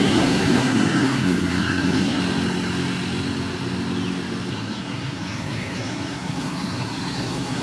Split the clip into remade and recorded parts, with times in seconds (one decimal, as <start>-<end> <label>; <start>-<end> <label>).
0.0-2.2 remade; 2.2-4.5 recorded; 4.5-7.6 remade